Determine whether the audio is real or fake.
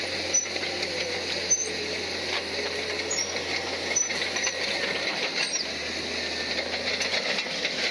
real